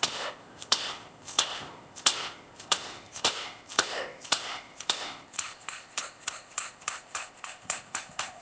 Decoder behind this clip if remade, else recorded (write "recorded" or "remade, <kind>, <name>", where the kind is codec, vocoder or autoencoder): remade, codec, ZipCodec